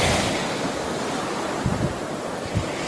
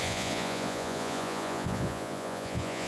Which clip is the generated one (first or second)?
second